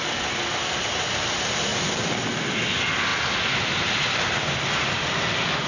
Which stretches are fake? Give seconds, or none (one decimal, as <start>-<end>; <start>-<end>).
none